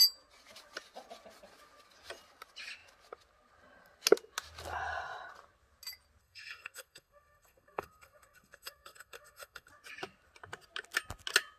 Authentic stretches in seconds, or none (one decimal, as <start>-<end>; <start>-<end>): 0.0-6.2; 9.7-11.6